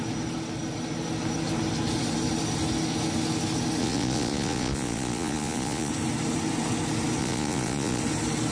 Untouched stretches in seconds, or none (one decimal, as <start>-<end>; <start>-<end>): 0.0-3.8; 5.9-7.2; 8.0-8.5